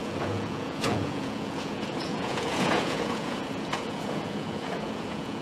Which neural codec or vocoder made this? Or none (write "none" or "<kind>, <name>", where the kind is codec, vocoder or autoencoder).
vocoder, Vocos